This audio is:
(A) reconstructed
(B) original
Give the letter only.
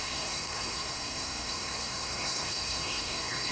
A